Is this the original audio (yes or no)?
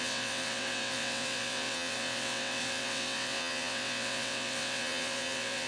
no